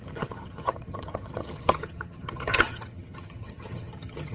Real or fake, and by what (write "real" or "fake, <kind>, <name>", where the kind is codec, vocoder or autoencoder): fake, vocoder, HiFi-GAN